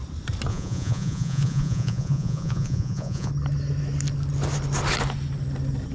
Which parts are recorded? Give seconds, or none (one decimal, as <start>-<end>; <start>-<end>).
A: 0.0-0.5; 3.3-5.9